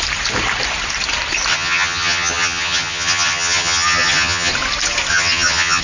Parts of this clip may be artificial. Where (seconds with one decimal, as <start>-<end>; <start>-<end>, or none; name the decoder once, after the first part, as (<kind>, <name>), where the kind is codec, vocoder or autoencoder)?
1.5-4.5 (vocoder, HiFi-GAN); 5.1-5.8